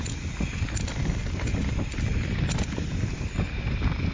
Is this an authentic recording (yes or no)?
yes